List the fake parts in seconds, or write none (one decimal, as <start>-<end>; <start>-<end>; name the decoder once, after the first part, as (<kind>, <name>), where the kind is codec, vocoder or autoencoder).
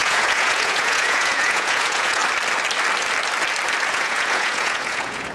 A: 0.0-2.2 (vocoder, Vocos); 3.9-5.3